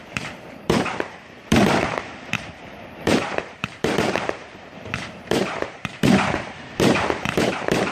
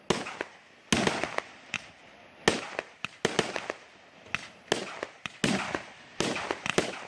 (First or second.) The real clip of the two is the second